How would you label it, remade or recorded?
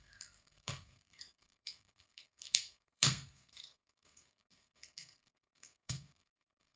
remade